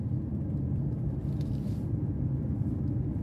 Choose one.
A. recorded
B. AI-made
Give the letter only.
A